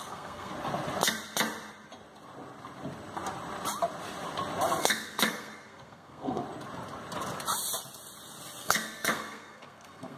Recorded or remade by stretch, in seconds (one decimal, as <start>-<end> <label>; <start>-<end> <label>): 0.0-0.5 remade; 0.5-4.8 recorded; 4.8-6.4 remade; 6.4-8.6 recorded; 8.6-10.2 remade